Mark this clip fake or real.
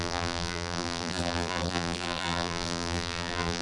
fake